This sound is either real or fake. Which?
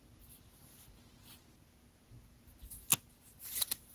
real